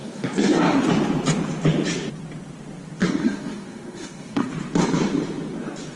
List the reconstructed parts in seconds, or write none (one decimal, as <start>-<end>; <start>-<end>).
0.0-0.8; 3.0-4.5